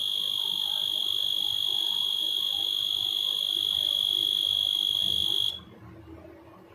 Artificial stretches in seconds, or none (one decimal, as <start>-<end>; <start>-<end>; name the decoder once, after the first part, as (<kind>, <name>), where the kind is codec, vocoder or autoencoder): 1.0-5.0 (vocoder, BigVGAN v2)